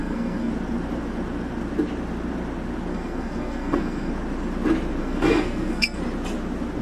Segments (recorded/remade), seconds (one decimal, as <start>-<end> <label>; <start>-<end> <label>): 0.0-0.5 remade; 0.5-2.9 recorded; 2.9-4.1 remade; 4.1-5.0 recorded; 5.0-6.0 remade; 6.0-6.8 recorded